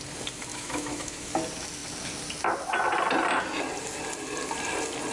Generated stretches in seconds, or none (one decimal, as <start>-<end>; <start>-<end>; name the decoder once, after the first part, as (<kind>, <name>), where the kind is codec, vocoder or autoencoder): 0.5-1.3 (autoencoder, DAC-VAE)